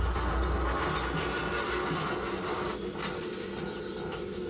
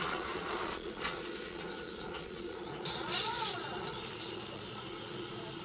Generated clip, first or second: second